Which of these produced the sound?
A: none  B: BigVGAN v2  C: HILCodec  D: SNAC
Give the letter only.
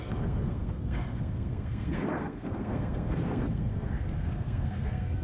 D